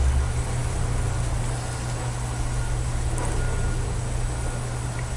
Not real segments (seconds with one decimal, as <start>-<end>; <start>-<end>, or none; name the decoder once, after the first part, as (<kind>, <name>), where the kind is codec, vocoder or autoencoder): none